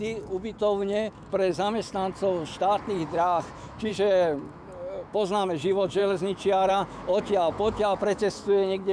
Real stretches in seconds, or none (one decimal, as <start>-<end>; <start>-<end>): 1.5-3.2; 3.9-4.4